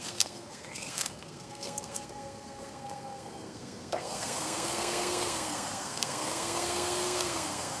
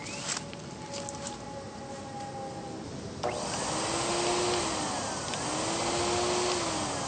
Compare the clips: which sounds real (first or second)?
second